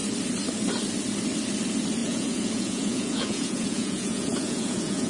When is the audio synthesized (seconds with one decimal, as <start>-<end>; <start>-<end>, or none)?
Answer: 2.0-5.1